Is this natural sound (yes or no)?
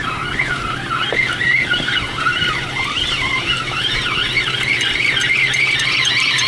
no